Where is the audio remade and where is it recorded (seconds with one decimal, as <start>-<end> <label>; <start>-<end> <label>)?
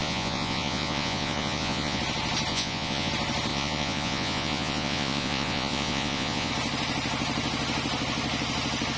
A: 0.0-2.0 remade; 2.0-2.5 recorded; 2.5-3.1 remade; 3.1-3.5 recorded; 3.5-6.5 remade; 6.5-9.0 recorded